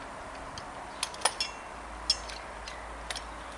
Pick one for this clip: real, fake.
real